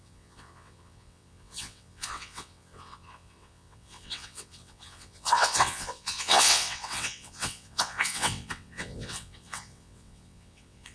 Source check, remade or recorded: remade